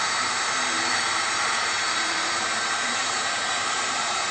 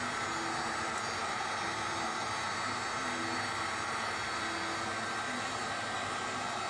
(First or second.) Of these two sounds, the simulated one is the first